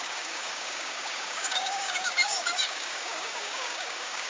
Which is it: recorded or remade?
remade